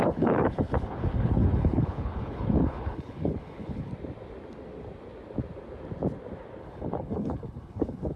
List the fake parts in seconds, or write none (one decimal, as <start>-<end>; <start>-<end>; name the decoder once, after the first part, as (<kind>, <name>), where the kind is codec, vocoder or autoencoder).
0.0-3.9 (codec, HILCodec); 6.6-8.2